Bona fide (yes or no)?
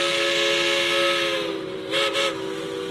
yes